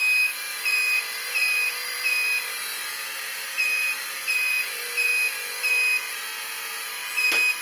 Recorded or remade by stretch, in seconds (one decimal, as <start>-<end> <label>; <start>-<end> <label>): 0.0-0.5 recorded; 0.5-5.1 remade; 5.1-7.6 recorded